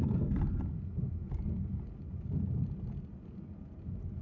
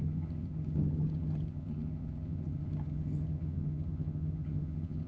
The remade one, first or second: second